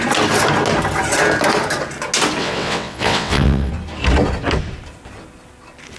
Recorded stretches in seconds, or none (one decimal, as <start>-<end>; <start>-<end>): 0.0-2.4; 3.7-6.0